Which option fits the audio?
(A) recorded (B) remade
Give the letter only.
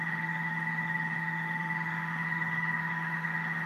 B